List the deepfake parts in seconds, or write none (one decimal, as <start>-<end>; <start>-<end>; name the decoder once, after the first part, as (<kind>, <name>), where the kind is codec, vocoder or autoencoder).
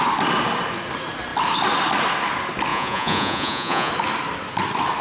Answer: 2.7-3.9 (vocoder, Vocos)